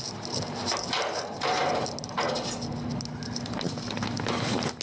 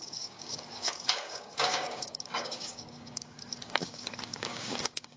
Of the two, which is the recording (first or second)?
first